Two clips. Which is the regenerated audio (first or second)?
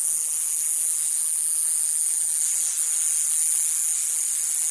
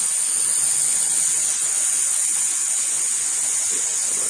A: second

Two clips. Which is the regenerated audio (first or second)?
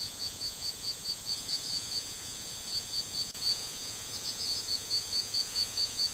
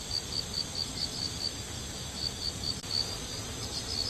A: first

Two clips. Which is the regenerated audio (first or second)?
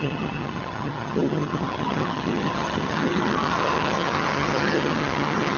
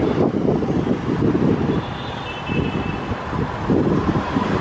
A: first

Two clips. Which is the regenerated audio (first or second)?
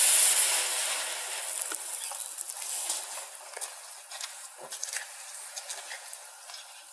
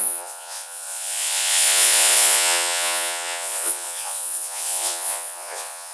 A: second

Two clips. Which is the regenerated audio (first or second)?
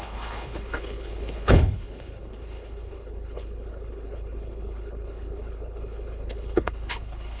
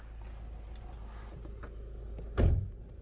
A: first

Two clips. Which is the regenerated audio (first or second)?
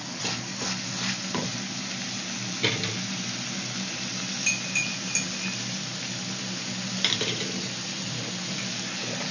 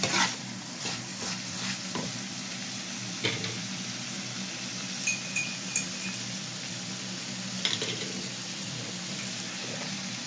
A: second